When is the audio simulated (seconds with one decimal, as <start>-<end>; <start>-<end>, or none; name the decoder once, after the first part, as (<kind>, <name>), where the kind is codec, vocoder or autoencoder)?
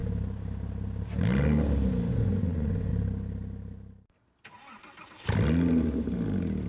2.1-2.9 (vocoder, Vocos)